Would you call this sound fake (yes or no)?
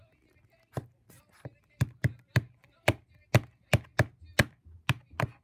no